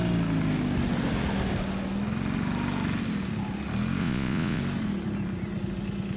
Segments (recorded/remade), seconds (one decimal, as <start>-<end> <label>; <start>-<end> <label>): 0.0-4.0 recorded; 4.0-4.6 remade; 4.6-6.2 recorded

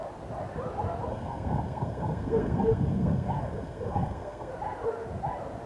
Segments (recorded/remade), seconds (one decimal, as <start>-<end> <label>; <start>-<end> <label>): 0.0-1.1 recorded; 1.1-4.5 remade; 4.5-5.7 recorded

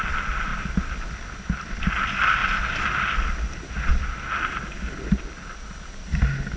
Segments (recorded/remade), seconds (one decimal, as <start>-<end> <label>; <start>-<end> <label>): 0.0-6.6 recorded

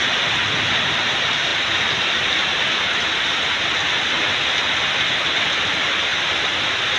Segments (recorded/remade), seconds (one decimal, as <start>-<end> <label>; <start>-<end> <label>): 0.0-1.5 recorded; 1.5-2.3 remade; 2.3-7.0 recorded

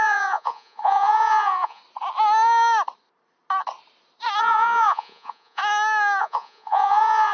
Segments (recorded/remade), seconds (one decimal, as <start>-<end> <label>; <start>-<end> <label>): 0.0-1.8 remade; 1.8-4.4 recorded; 4.4-5.6 remade; 5.6-6.2 recorded; 6.2-7.3 remade